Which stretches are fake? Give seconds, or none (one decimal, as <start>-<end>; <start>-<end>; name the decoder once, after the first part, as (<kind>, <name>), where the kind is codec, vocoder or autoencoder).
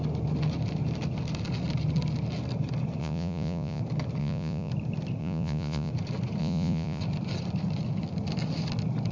3.0-3.8 (vocoder, Vocos); 4.2-4.7; 5.2-5.9; 6.4-7.0